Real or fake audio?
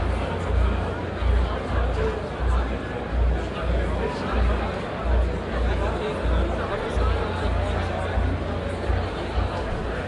real